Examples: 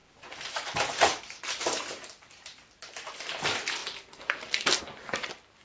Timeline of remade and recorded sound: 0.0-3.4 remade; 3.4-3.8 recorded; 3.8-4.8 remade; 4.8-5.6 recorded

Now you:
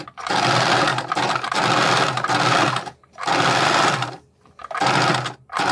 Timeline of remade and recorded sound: 0.0-4.6 remade; 4.6-5.7 recorded

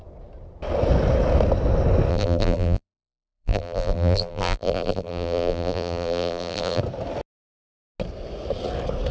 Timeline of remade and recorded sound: 0.0-2.1 recorded; 2.1-6.8 remade; 6.8-9.1 recorded

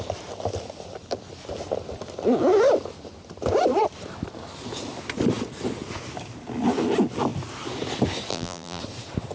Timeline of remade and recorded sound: 0.0-8.3 recorded; 8.3-8.8 remade; 8.8-9.3 recorded

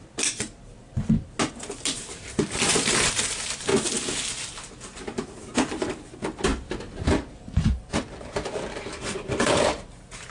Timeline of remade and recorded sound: 0.0-2.3 recorded; 2.3-3.7 remade; 3.7-5.3 recorded; 5.3-6.5 remade; 6.5-7.1 recorded; 7.1-10.3 remade

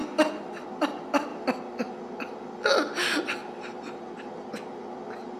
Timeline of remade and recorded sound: 0.0-0.5 recorded; 0.5-1.3 remade; 1.3-2.1 recorded; 2.1-5.4 remade

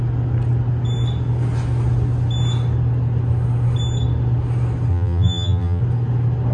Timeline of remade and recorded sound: 0.0-4.9 recorded; 4.9-5.8 remade; 5.8-6.5 recorded